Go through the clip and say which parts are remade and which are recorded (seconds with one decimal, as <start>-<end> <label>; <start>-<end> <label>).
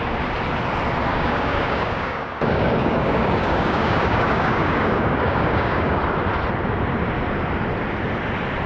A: 0.0-1.1 recorded; 1.1-6.0 remade; 6.0-8.7 recorded